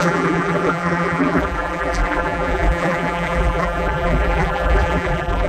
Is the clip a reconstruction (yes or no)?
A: yes